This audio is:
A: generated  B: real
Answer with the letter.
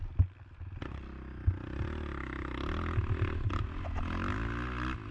B